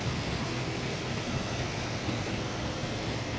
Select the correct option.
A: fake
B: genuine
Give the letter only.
A